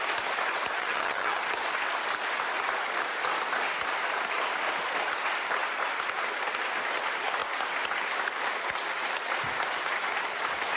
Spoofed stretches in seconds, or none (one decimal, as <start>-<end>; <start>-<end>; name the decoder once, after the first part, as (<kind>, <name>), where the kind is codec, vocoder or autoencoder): 0.8-1.4 (vocoder, HiFi-GAN)